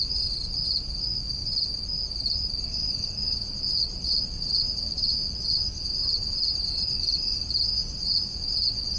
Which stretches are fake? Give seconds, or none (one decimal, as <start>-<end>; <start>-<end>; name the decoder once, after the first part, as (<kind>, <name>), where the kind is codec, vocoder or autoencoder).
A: 7.8-9.0 (vocoder, Vocos)